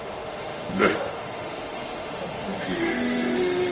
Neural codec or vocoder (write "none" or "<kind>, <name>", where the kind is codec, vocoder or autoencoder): autoencoder, DAC-VAE